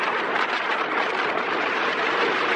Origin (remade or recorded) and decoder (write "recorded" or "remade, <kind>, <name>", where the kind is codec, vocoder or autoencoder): remade, vocoder, BigVGAN v2